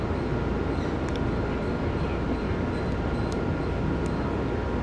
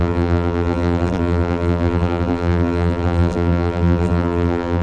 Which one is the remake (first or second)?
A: second